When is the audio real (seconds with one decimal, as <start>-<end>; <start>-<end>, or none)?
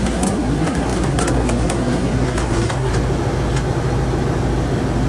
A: 2.9-5.1